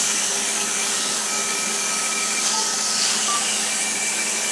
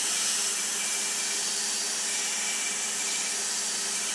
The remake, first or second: first